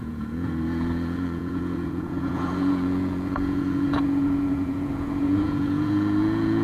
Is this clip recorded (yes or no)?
no